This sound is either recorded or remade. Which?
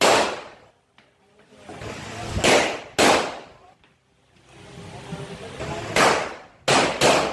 recorded